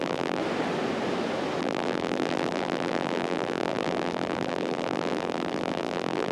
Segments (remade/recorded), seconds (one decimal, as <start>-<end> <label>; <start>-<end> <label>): 0.0-0.4 remade; 0.4-1.6 recorded; 1.6-6.3 remade